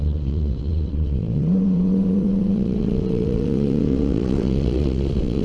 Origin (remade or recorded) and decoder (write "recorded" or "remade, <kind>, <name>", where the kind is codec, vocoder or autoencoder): remade, vocoder, WaveNeXt